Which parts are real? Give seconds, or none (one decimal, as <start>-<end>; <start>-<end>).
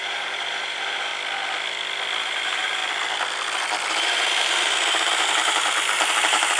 1.1-2.2; 2.8-3.9